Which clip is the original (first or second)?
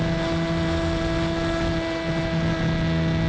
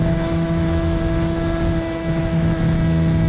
first